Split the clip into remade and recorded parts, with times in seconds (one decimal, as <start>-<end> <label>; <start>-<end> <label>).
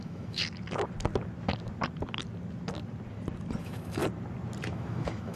0.0-0.4 remade; 0.4-3.6 recorded; 3.6-4.0 remade; 4.0-4.7 recorded; 4.7-5.4 remade